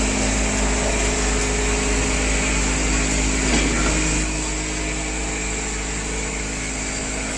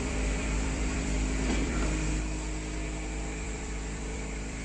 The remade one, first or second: second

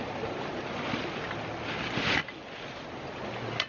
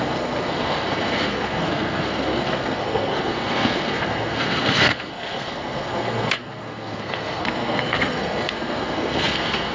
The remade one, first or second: second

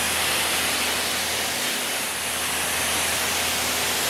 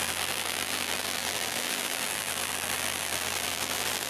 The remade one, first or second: second